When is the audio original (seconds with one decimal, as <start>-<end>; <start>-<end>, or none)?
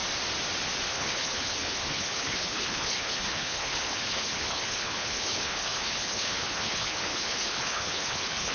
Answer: 0.0-0.9